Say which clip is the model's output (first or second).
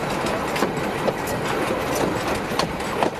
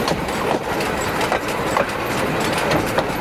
second